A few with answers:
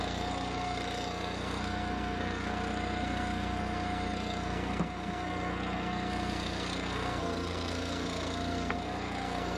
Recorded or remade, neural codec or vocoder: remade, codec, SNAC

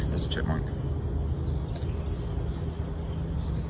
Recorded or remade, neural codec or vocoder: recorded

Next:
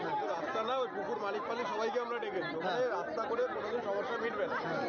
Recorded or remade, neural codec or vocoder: recorded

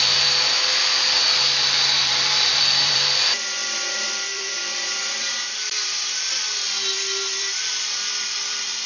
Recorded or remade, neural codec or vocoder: remade, vocoder, BigVGAN v2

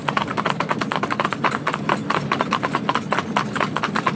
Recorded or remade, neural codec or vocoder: recorded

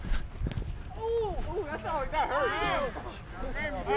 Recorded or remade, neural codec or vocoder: recorded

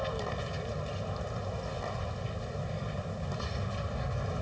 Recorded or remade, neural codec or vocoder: recorded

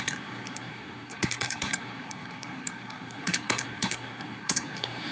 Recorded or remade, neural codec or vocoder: remade, codec, SNAC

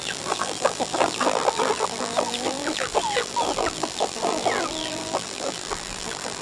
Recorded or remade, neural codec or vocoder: remade, vocoder, BigVGAN v2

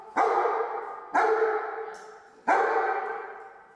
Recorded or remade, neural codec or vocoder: recorded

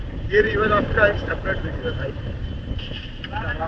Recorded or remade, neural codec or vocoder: remade, vocoder, BigVGAN v2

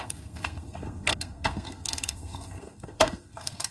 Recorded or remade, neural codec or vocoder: remade, codec, SNAC